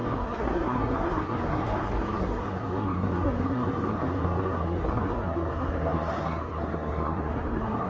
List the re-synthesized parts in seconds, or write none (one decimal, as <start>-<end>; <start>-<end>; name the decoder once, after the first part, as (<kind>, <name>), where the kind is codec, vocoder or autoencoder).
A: 0.0-7.9 (codec, SNAC)